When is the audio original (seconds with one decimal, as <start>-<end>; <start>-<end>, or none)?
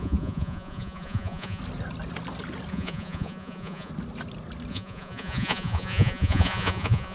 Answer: 1.6-2.7; 3.9-4.7